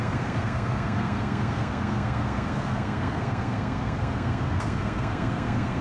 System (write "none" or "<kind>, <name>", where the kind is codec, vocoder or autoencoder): codec, SNAC